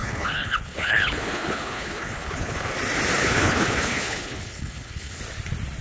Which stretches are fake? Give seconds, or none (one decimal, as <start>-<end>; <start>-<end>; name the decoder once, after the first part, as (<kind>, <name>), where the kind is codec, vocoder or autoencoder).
0.0-2.7 (codec, HILCodec); 3.2-5.2